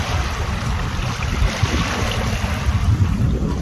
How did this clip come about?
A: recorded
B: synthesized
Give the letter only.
A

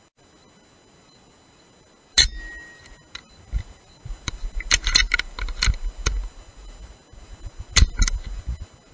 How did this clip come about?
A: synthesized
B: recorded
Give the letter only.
B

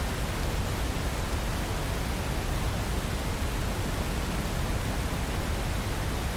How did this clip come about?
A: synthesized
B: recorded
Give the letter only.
B